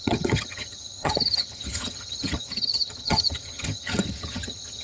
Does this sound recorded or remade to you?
remade